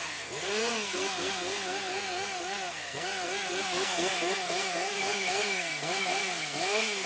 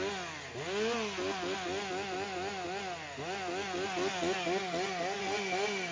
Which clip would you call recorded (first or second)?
second